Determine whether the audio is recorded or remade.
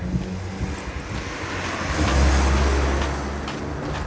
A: recorded